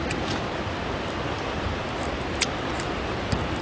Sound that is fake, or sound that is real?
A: real